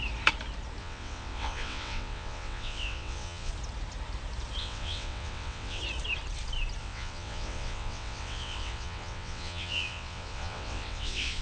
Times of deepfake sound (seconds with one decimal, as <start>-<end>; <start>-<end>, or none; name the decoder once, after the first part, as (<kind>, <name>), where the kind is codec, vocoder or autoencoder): 0.8-3.5 (vocoder, WaveNeXt); 4.6-5.8; 6.8-11.4